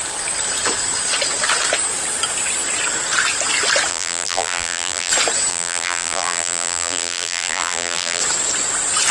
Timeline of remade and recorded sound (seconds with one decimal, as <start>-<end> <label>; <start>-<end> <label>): 0.0-3.9 recorded; 3.9-5.1 remade; 5.1-5.5 recorded; 5.5-8.2 remade; 8.2-9.1 recorded